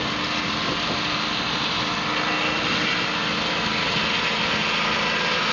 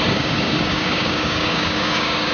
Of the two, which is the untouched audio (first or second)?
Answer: first